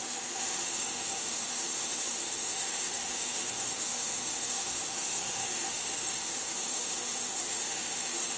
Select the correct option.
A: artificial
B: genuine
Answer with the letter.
A